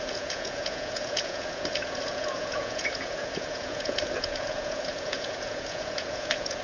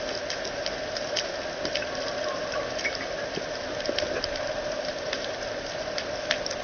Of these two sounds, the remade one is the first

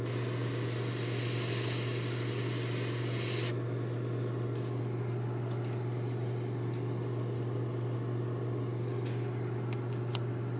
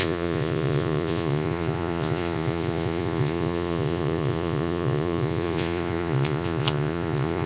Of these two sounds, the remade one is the second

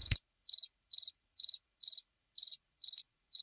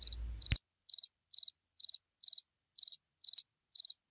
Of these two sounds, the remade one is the first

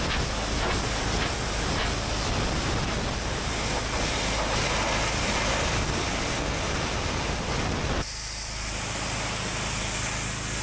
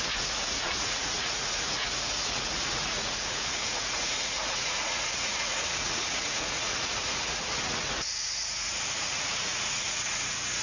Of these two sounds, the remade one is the second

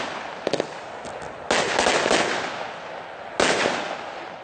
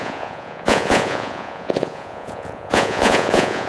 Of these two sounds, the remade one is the second